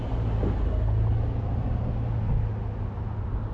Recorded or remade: recorded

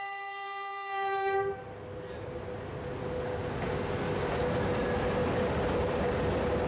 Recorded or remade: recorded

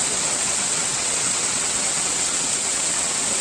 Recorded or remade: remade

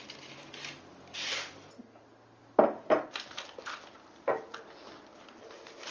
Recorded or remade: recorded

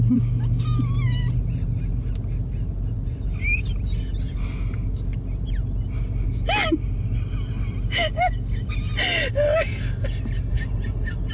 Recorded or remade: recorded